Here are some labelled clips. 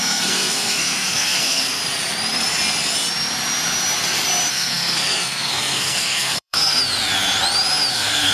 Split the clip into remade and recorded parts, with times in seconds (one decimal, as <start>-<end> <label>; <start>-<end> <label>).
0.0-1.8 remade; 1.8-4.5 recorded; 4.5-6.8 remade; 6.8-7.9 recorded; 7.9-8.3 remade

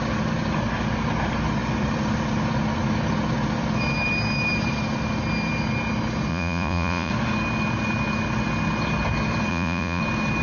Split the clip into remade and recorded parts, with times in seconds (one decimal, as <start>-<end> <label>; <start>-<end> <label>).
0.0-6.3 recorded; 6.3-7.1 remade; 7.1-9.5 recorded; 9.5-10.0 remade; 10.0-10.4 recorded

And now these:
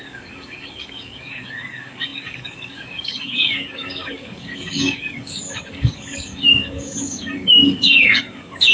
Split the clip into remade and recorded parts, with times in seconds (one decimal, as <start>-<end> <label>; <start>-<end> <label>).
0.0-8.7 remade